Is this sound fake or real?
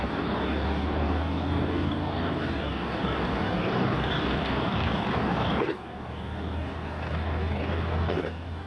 fake